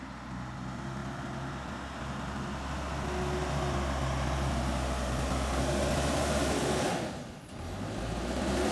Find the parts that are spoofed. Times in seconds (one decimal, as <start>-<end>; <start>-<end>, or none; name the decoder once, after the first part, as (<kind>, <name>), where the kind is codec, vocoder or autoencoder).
none